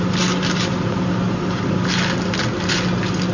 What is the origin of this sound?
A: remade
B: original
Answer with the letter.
B